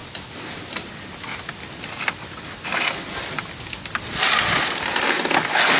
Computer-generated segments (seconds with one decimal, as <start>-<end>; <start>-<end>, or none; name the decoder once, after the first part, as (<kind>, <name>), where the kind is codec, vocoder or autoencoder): 0.0-3.5 (vocoder, BigVGAN v2)